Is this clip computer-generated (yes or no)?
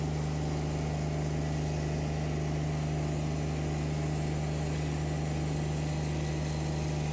no